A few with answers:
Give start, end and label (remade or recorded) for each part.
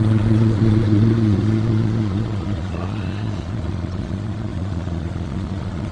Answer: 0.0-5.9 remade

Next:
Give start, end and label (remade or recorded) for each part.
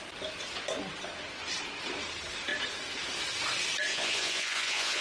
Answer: 0.0-3.9 recorded; 3.9-5.0 remade